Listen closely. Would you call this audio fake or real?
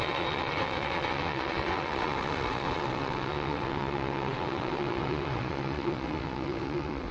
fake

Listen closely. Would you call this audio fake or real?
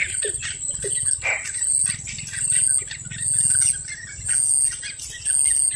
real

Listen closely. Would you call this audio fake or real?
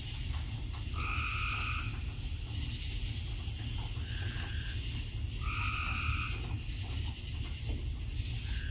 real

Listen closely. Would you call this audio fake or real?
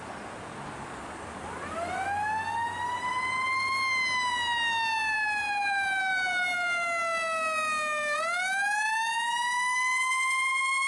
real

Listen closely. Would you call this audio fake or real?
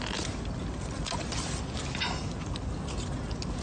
real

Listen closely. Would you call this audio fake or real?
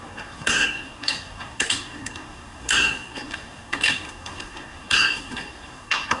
fake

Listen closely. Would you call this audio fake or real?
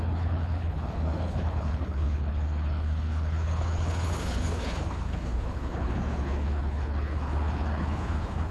fake